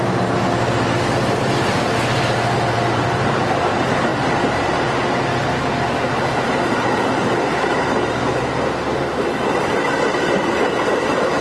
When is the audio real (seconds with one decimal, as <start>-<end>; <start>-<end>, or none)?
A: 0.0-11.4